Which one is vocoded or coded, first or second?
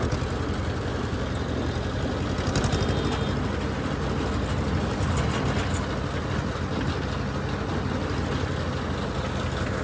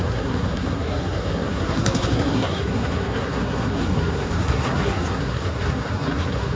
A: second